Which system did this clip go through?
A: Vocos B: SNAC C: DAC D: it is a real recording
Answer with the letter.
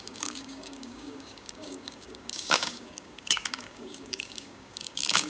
C